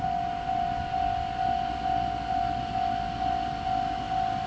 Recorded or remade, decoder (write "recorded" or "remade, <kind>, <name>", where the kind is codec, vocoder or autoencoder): recorded